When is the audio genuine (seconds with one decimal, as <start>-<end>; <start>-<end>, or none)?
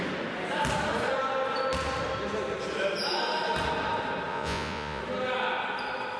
0.0-4.3; 5.0-6.2